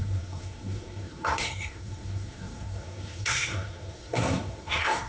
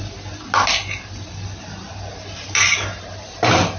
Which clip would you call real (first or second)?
second